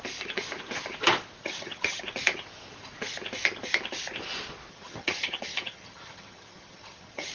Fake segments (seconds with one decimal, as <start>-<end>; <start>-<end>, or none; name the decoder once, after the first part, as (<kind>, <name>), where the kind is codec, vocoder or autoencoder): 1.4-2.0 (vocoder, HiFi-GAN); 4.7-7.3